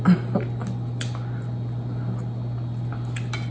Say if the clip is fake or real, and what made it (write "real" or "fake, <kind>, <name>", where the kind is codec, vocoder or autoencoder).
real